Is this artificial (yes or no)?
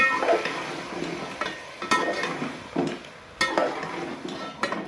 no